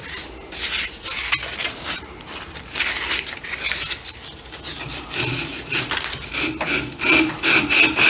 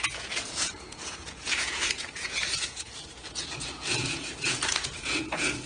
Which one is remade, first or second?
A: second